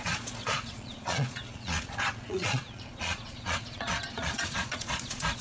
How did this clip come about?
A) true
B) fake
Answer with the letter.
B